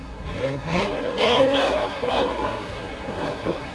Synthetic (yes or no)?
yes